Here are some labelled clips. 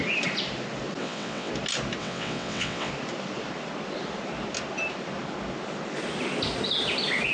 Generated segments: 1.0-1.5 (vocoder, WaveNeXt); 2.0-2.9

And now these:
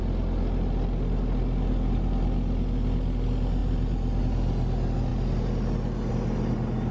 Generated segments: 3.6-4.2 (vocoder, BigVGAN v2)

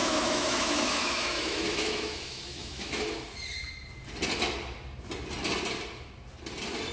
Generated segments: 0.0-3.0 (autoencoder, DAC-VAE)

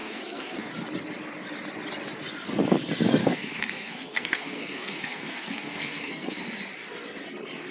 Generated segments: 0.0-0.7 (codec, SNAC); 3.2-6.4

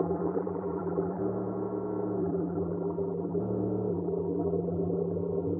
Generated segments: 0.0-1.2 (vocoder, BigVGAN v2); 2.2-3.4; 3.9-5.6

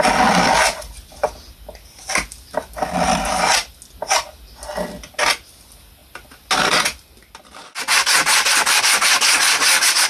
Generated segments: none

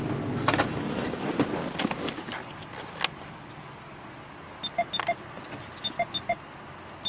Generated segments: 0.7-1.3 (autoencoder, DAC-VAE)

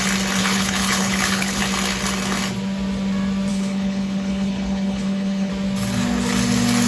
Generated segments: 0.4-1.6 (codec, HILCodec); 3.5-5.5